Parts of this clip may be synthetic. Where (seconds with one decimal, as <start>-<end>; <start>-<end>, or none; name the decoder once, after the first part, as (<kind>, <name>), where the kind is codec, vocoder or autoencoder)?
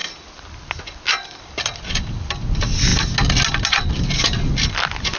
none